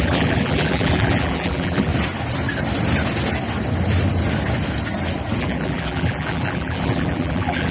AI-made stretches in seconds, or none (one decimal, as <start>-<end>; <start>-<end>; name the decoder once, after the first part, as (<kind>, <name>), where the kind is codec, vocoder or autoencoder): 0.0-1.9 (vocoder, BigVGAN v2); 5.4-7.7